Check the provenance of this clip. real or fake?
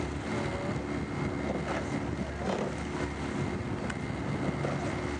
real